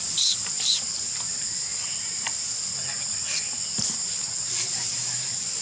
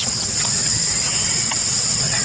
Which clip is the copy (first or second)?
second